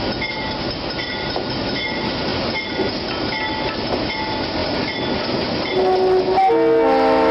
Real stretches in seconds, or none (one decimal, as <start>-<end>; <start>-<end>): 0.0-7.3